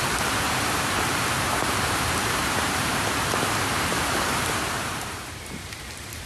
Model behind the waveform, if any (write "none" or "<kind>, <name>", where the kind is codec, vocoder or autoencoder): vocoder, BigVGAN v2